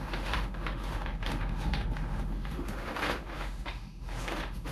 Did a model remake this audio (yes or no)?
yes